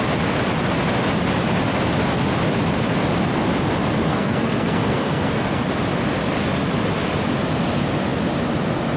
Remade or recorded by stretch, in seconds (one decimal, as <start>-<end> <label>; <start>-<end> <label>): 0.0-4.1 recorded; 4.1-5.6 remade; 5.6-9.0 recorded